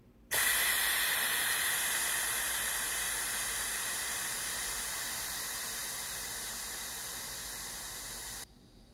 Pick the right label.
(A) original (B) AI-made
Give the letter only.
B